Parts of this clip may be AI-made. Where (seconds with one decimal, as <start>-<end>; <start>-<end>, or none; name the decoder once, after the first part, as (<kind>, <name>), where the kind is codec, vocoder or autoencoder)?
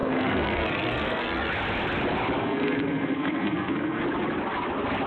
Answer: 0.0-1.5 (codec, SNAC); 2.4-4.0